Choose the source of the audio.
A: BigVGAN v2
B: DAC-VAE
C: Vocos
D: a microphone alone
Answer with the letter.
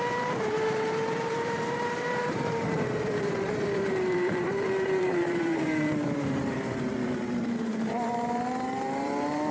A